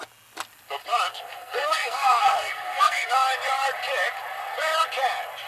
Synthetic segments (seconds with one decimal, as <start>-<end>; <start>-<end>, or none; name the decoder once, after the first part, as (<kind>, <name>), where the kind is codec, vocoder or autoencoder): 1.1-3.1 (codec, SNAC)